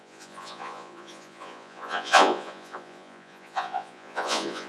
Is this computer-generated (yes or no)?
yes